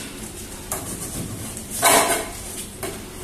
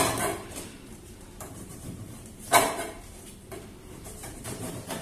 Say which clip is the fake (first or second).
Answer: second